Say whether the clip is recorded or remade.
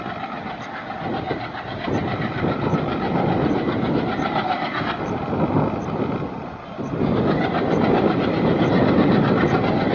recorded